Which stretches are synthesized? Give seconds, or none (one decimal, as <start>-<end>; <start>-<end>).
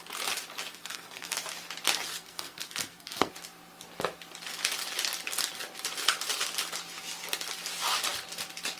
0.7-1.4; 2.1-3.3